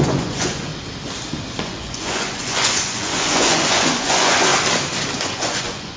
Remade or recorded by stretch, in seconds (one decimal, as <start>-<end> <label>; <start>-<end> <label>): 0.0-0.7 remade; 0.7-1.6 recorded; 1.6-4.5 remade; 4.5-5.2 recorded; 5.2-6.0 remade

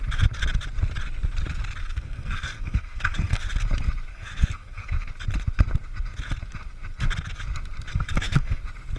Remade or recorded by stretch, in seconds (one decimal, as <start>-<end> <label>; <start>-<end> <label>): 0.0-1.8 recorded; 1.8-3.4 remade; 3.4-4.1 recorded; 4.1-5.1 remade; 5.1-7.9 recorded; 7.9-8.6 remade; 8.6-9.0 recorded

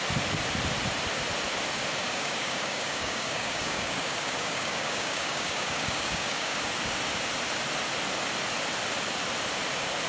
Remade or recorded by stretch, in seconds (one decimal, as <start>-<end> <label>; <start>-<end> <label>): 0.0-2.0 recorded; 2.0-6.6 remade; 6.6-10.1 recorded

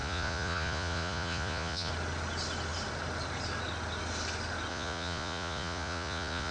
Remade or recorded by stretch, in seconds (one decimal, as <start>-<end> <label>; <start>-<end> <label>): 0.0-1.9 remade; 1.9-4.7 recorded; 4.7-6.5 remade

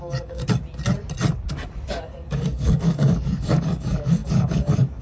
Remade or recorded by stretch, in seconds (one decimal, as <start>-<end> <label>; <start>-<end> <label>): 0.0-0.4 remade; 0.4-1.9 recorded; 1.9-5.0 remade

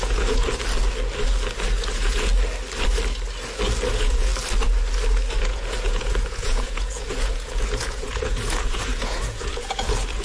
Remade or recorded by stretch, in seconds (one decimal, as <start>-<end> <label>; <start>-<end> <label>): 0.0-0.5 remade; 0.5-1.9 recorded; 1.9-2.3 remade; 2.3-3.9 recorded; 3.9-4.3 remade; 4.3-5.4 recorded; 5.4-10.2 remade

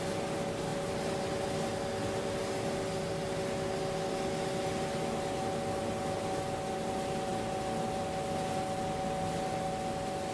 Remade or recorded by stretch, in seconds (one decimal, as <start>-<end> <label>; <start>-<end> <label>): 0.0-10.3 recorded

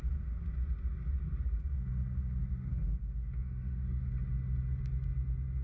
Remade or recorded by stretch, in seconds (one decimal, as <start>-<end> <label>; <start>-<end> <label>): 0.0-2.4 recorded; 2.4-4.1 remade; 4.1-5.6 recorded